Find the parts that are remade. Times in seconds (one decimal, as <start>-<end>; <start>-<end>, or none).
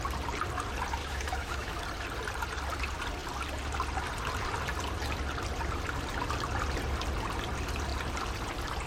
1.0-1.8